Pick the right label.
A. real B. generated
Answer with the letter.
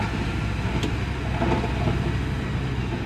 A